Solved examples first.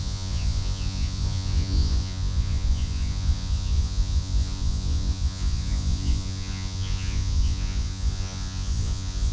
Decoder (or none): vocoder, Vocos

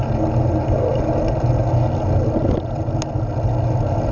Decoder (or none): none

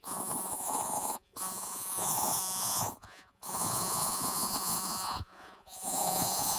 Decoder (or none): vocoder, Vocos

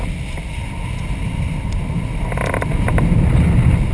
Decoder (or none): none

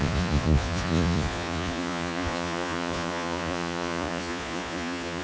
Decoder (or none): vocoder, Vocos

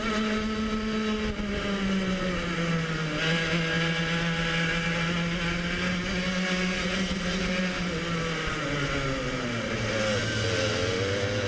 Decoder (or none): none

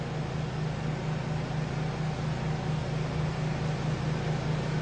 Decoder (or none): none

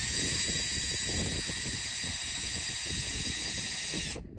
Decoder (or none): vocoder, Vocos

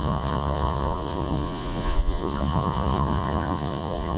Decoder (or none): vocoder, Vocos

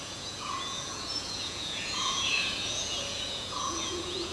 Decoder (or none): vocoder, Vocos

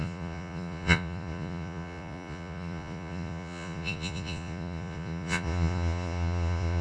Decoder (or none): vocoder, Vocos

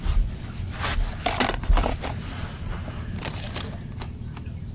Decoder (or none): none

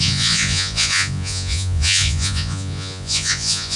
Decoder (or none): vocoder, Vocos